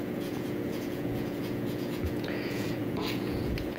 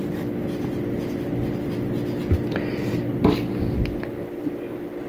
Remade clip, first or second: first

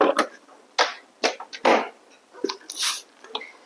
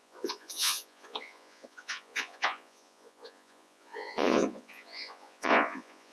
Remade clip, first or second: second